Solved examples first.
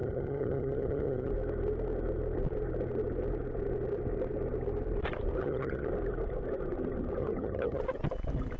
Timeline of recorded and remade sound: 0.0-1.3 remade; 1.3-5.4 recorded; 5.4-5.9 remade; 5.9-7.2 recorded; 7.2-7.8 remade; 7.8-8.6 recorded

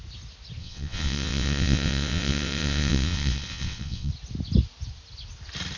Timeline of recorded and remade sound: 0.0-0.6 recorded; 0.6-4.1 remade; 4.1-5.8 recorded

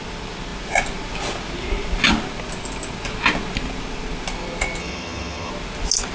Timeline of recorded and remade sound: 0.0-4.8 recorded; 4.8-5.5 remade; 5.5-6.1 recorded

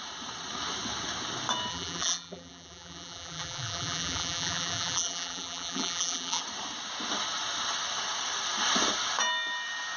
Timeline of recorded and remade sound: 0.0-1.7 recorded; 1.7-6.4 remade; 6.4-10.0 recorded

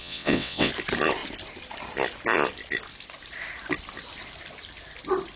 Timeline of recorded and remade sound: 0.0-0.7 remade; 0.7-5.4 recorded